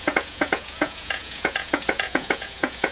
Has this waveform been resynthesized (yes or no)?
yes